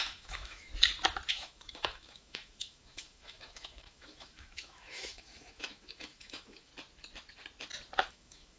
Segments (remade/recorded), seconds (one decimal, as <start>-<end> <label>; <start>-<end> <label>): 0.0-0.7 remade; 0.7-1.3 recorded; 1.3-6.7 remade; 6.7-8.1 recorded; 8.1-8.6 remade